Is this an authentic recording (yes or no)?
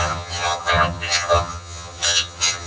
no